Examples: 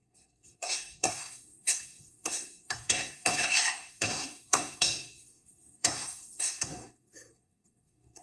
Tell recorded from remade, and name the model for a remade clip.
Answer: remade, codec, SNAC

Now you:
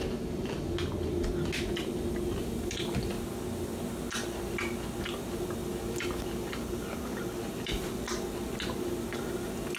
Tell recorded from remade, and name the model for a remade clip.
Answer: recorded